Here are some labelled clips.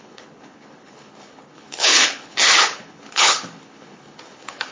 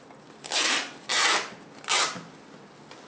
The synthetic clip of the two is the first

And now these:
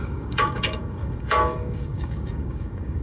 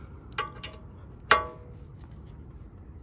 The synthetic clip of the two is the first